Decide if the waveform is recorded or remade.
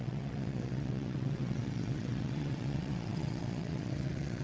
remade